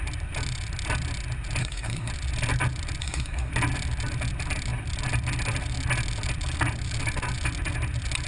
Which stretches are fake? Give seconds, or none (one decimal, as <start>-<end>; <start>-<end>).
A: 1.6-2.1; 3.0-3.5